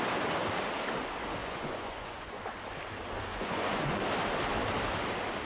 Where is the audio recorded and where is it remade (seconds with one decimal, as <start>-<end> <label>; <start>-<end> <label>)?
0.0-1.4 recorded; 1.4-2.4 remade; 2.4-3.3 recorded; 3.3-4.0 remade; 4.0-5.5 recorded